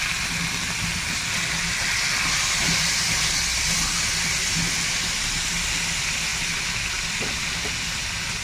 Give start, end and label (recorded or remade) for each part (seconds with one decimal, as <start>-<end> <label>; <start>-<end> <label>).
0.0-8.4 recorded